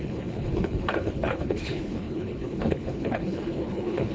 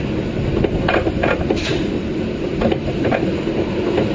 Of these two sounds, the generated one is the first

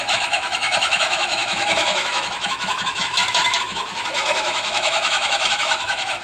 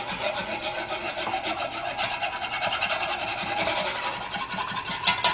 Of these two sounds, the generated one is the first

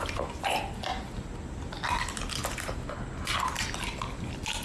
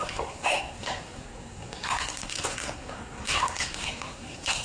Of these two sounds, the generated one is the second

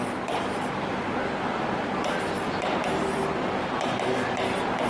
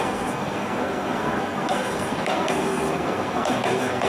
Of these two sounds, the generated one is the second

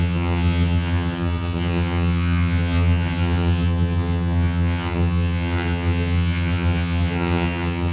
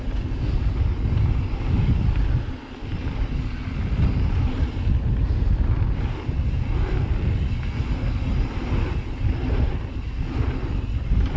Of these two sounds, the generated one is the first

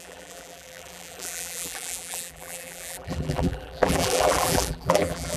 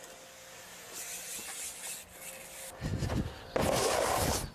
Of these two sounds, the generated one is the first